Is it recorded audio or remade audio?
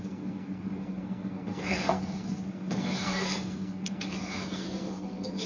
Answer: remade